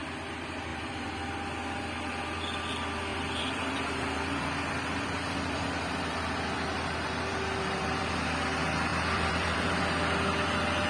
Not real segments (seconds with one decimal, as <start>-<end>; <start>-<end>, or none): 0.7-1.2; 3.1-8.1; 8.9-9.7